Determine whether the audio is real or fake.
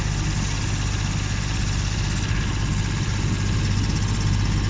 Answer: real